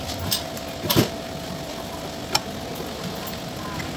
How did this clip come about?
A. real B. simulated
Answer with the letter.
A